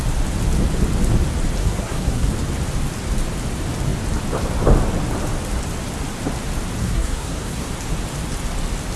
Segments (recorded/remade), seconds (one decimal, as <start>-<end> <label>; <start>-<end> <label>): 0.0-1.6 recorded; 1.6-2.3 remade; 2.3-6.8 recorded; 6.8-7.7 remade; 7.7-9.0 recorded